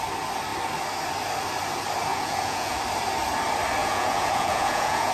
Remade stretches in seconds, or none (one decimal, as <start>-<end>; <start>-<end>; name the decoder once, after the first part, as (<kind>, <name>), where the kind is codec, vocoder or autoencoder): 2.1-2.8 (vocoder, Vocos); 3.8-5.1